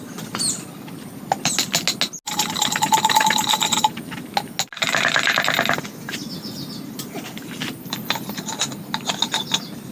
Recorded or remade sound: recorded